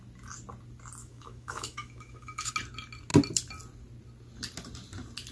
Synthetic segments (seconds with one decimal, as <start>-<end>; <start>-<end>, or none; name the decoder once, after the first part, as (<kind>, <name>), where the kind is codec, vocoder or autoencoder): 1.0-2.5 (autoencoder, DAC-VAE)